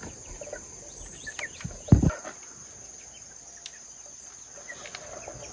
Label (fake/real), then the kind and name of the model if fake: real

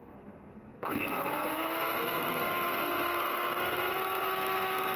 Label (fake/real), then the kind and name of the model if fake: fake, codec, SNAC